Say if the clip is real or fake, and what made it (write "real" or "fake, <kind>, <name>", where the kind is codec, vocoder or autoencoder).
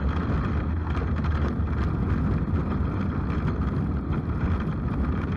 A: real